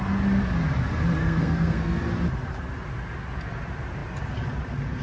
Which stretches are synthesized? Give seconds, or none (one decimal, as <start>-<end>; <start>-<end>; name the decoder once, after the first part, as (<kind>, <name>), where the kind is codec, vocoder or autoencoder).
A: 1.2-2.0 (codec, SNAC)